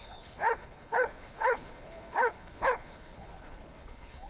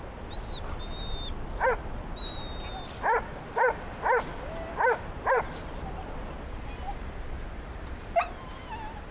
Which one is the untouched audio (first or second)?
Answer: second